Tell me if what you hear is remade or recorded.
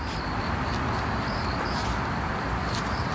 recorded